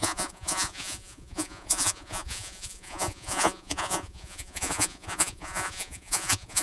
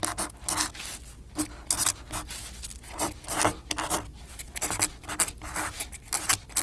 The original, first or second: second